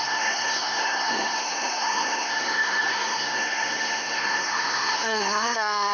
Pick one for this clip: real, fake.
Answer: fake